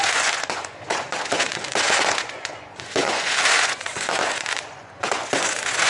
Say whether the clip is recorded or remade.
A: remade